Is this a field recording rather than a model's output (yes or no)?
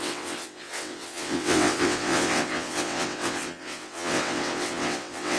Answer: no